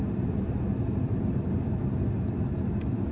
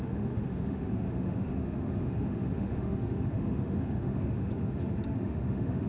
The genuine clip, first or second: first